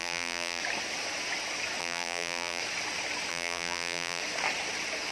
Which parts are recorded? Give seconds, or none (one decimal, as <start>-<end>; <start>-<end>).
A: 0.6-1.8; 2.6-3.3; 4.2-5.1